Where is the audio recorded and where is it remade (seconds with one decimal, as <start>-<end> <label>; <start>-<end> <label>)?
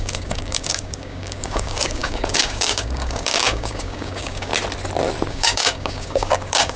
0.0-4.5 remade; 4.5-5.3 recorded; 5.3-6.8 remade